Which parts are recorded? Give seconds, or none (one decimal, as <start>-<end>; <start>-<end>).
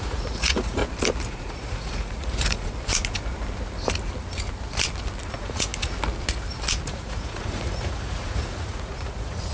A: 0.8-1.3; 2.7-5.3; 5.7-6.8